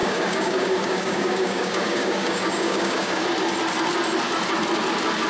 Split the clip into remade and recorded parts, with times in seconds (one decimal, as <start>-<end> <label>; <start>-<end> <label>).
0.0-3.2 remade; 3.2-5.3 recorded